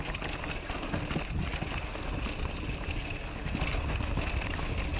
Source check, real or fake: real